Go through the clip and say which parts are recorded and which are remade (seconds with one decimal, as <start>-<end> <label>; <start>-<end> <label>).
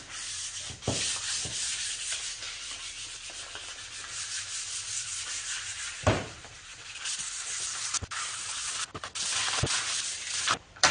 0.0-8.6 remade; 8.6-10.2 recorded; 10.2-10.9 remade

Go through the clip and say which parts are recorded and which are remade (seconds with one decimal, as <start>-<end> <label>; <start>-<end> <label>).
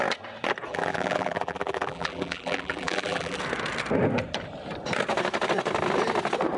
0.0-0.7 recorded; 0.7-3.4 remade; 3.4-6.6 recorded